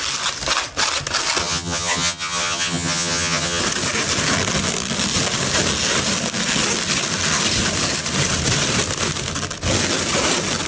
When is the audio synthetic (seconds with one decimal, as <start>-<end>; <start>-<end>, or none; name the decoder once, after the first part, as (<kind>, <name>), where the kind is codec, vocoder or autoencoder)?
1.4-3.6 (vocoder, HiFi-GAN)